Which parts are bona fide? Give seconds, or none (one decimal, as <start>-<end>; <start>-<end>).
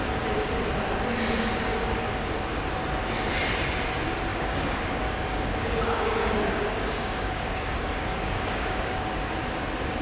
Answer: 0.0-1.7; 2.6-4.3; 9.0-10.0